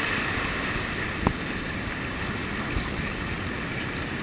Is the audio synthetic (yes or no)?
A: no